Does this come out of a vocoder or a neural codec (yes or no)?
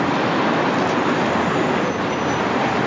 no